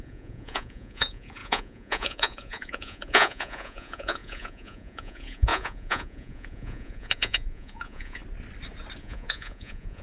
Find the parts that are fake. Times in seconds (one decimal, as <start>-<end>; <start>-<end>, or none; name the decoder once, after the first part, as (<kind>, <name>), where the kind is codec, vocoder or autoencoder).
0.0-8.2 (vocoder, Vocos); 9.0-10.0